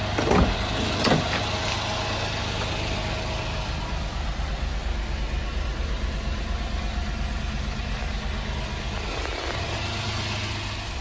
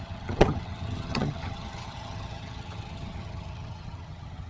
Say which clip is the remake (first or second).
second